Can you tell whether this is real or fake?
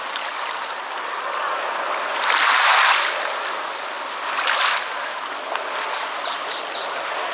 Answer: real